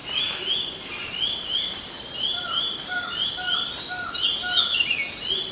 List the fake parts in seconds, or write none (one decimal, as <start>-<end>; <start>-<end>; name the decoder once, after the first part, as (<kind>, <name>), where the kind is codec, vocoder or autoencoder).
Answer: 0.0-3.3 (vocoder, BigVGAN v2)